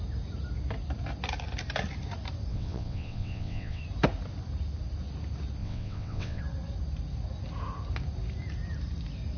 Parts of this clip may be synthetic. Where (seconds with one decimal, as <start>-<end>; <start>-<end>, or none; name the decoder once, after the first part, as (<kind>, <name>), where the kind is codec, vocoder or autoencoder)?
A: 2.5-3.8 (vocoder, WaveNeXt); 5.6-6.4